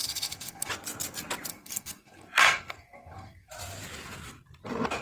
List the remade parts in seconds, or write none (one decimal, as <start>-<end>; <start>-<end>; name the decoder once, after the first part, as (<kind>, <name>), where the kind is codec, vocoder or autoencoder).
0.0-0.7 (codec, SNAC); 1.5-3.5